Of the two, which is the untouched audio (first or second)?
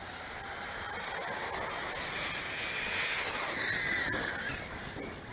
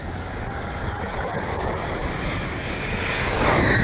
first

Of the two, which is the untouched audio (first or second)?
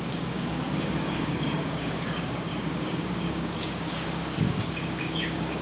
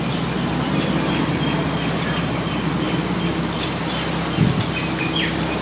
second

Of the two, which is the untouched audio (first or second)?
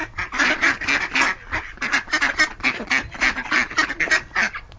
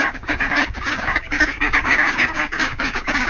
first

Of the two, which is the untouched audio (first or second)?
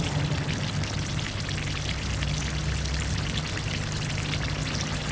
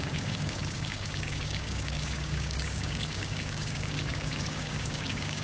first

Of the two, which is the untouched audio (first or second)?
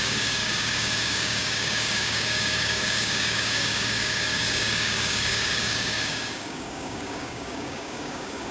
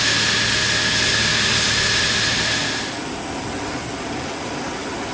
second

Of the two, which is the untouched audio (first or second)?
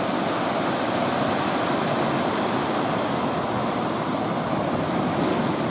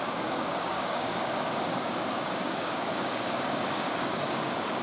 first